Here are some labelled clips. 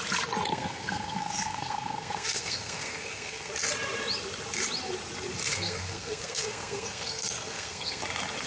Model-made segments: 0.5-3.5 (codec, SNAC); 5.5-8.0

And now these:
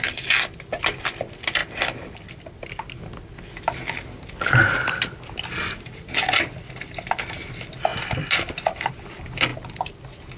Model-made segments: none

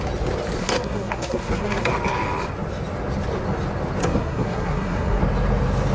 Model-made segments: 0.6-1.9 (codec, SNAC); 4.0-5.2

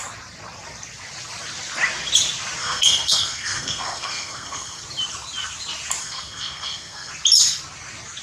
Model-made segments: 2.6-4.8 (codec, SNAC); 6.0-7.1

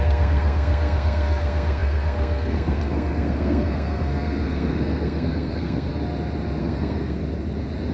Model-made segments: 0.0-5.9 (codec, SNAC); 6.6-7.2

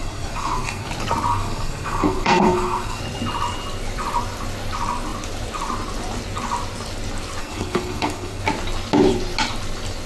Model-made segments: 0.0-0.9 (codec, SNAC); 1.3-3.0; 7.4-8.4

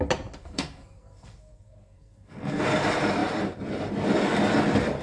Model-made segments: 0.4-2.6 (codec, SNAC)

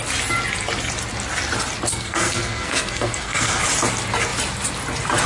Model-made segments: 1.9-3.6 (codec, SNAC)